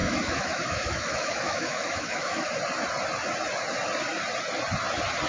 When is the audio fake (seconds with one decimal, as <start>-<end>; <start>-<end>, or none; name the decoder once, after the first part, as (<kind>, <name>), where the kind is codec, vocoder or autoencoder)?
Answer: 0.0-2.5 (autoencoder, DAC-VAE)